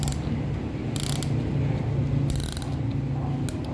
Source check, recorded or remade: recorded